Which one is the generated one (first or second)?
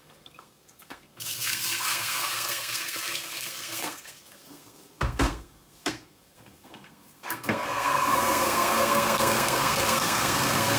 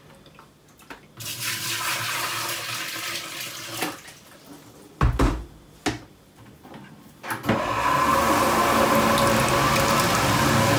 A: first